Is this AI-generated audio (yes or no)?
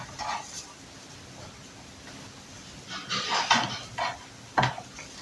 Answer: no